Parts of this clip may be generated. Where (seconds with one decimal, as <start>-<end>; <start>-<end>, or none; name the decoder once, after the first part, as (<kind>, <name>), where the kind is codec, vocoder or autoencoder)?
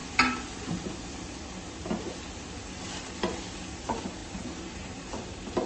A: 4.2-5.1 (vocoder, BigVGAN v2)